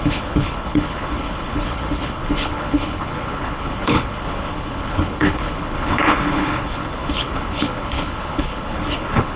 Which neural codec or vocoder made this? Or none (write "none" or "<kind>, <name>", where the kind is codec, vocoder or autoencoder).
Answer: codec, HILCodec